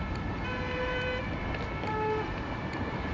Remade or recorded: recorded